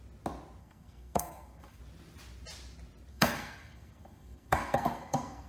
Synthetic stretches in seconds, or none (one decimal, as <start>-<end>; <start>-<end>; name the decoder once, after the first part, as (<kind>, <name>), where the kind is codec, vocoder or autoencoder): 0.6-1.8 (codec, SNAC); 3.1-5.5